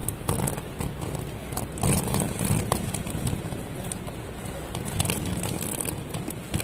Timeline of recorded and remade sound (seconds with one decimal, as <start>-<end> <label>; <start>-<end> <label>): 0.0-0.8 remade; 0.8-6.6 recorded

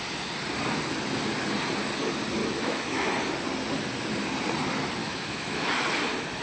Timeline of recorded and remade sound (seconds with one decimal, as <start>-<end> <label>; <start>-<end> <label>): 0.0-2.4 recorded; 2.4-3.1 remade; 3.1-5.0 recorded; 5.0-5.7 remade; 5.7-6.4 recorded

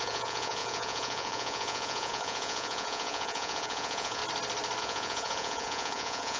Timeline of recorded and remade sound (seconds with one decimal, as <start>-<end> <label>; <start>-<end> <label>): 0.0-4.2 remade; 4.2-4.8 recorded; 4.8-6.4 remade

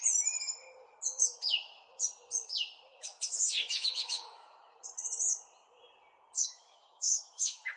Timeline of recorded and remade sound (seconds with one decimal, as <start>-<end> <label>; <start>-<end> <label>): 0.0-2.9 recorded; 2.9-4.8 remade; 4.8-6.4 recorded; 6.4-7.8 remade

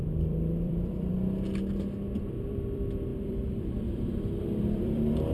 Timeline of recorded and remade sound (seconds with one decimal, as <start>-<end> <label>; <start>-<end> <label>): 0.0-1.1 remade; 1.1-2.2 recorded; 2.2-5.3 remade

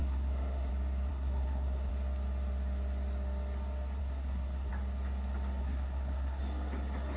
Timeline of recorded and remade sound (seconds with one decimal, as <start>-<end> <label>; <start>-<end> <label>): 0.0-0.7 remade; 0.7-1.1 recorded; 1.1-1.9 remade; 1.9-4.0 recorded; 4.0-4.7 remade; 4.7-5.6 recorded; 5.6-6.4 remade; 6.4-7.2 recorded

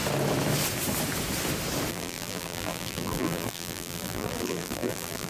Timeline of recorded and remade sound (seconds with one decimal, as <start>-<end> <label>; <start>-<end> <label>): 0.0-1.9 recorded; 1.9-5.3 remade

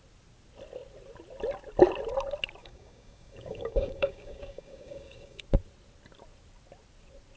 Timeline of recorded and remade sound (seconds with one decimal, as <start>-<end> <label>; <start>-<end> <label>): 0.0-2.6 recorded; 2.6-5.4 remade; 5.4-7.4 recorded